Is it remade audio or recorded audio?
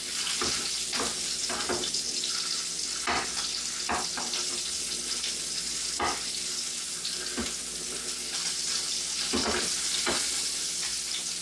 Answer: recorded